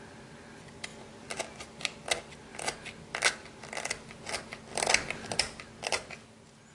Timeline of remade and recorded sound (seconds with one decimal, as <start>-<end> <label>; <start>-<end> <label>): 0.0-6.7 recorded